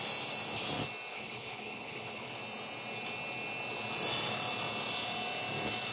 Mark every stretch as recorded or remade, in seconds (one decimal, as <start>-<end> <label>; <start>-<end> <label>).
0.0-1.1 recorded; 1.1-2.4 remade; 2.4-5.9 recorded